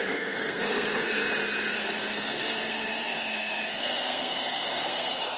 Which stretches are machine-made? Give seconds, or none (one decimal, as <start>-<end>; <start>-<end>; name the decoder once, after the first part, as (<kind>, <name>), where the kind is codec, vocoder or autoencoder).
0.0-1.2 (codec, SNAC); 1.7-5.4